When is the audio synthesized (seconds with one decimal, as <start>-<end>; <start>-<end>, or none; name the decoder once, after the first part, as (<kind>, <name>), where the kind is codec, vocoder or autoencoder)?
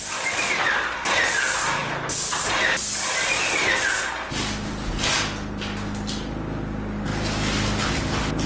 none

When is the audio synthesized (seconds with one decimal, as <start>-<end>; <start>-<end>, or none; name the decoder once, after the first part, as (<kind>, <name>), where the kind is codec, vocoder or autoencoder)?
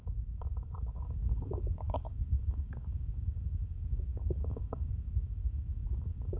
0.0-6.4 (codec, DAC)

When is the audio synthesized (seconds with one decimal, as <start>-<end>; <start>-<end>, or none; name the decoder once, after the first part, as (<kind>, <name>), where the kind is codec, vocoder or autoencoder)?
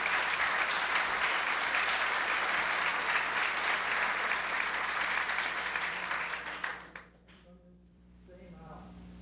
0.0-6.7 (vocoder, BigVGAN v2); 7.3-9.2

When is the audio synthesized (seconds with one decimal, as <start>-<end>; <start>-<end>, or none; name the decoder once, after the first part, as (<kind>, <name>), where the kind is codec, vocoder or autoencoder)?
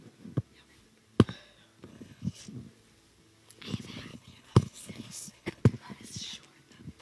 1.9-2.4 (codec, HILCodec); 4.1-5.6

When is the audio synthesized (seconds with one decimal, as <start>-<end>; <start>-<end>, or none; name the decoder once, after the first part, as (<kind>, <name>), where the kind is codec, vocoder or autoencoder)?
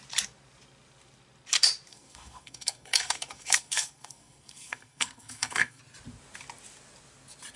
1.9-5.8 (codec, SNAC)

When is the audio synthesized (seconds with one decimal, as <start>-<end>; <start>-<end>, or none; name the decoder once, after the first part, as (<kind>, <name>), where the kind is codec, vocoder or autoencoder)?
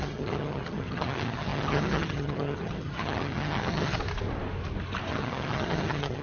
0.0-4.0 (vocoder, HiFi-GAN); 5.1-6.2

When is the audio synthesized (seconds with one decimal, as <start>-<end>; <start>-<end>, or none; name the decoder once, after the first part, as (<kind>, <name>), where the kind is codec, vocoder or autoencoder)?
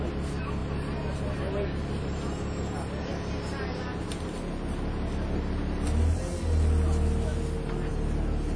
none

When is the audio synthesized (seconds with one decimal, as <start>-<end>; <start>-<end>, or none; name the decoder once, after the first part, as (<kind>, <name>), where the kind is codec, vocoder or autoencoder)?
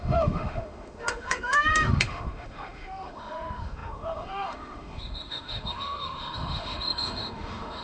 0.0-7.8 (autoencoder, DAC-VAE)